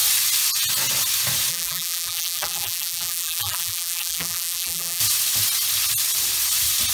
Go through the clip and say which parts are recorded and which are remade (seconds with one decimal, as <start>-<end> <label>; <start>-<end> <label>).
0.0-1.5 recorded; 1.5-5.0 remade; 5.0-6.9 recorded